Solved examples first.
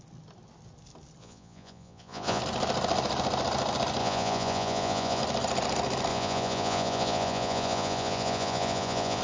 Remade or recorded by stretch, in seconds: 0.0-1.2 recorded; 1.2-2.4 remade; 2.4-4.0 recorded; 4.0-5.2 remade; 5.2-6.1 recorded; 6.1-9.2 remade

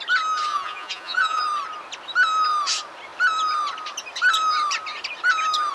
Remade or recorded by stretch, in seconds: 0.0-0.5 recorded; 0.5-1.4 remade; 1.4-5.7 recorded

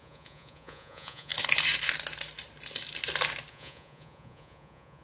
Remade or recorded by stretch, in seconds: 0.0-1.3 remade; 1.3-3.5 recorded; 3.5-5.0 remade

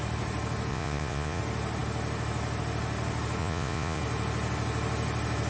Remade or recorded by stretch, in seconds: 0.0-0.7 recorded; 0.7-1.4 remade; 1.4-3.4 recorded; 3.4-4.0 remade; 4.0-5.5 recorded

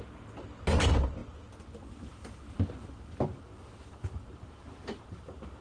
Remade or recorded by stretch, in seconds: 0.0-5.6 recorded

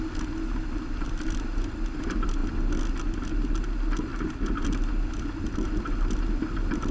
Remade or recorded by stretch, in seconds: 0.0-6.9 recorded

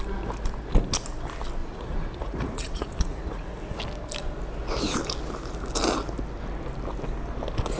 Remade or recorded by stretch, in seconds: 0.0-1.6 recorded; 1.6-3.5 remade; 3.5-7.8 recorded